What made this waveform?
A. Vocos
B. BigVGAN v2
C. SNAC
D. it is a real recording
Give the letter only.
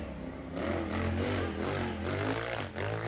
D